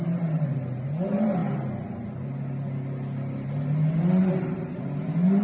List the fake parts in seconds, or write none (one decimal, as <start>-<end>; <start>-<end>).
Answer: none